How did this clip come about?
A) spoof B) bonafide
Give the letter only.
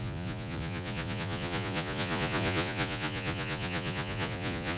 A